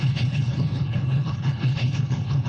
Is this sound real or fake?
fake